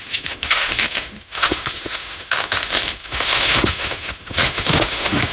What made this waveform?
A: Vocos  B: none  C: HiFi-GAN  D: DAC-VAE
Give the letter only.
D